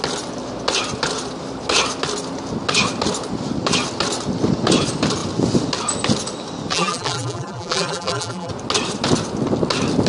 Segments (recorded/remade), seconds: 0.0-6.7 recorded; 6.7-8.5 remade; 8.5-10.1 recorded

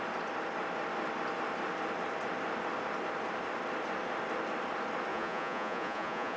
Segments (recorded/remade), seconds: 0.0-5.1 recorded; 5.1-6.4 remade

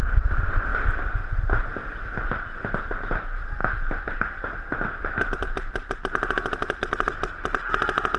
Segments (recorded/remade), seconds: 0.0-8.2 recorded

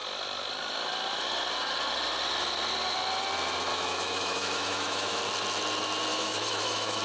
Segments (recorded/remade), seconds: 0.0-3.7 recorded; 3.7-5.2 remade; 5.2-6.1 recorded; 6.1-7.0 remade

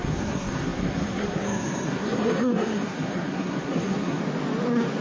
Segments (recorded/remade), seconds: 0.0-4.2 remade; 4.2-5.0 recorded